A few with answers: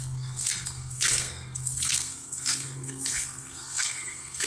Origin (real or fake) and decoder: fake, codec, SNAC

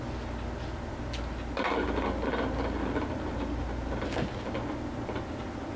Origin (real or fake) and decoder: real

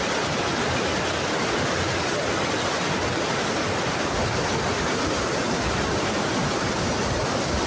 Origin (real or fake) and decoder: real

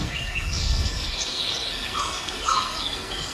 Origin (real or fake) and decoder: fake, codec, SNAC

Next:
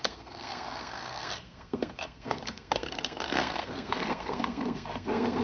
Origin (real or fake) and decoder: fake, codec, SNAC